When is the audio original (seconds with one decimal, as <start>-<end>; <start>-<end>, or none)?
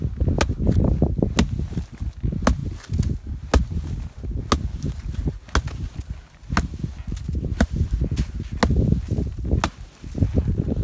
0.0-10.8